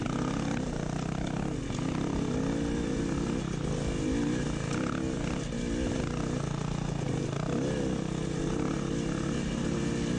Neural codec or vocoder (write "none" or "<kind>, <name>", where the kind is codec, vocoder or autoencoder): none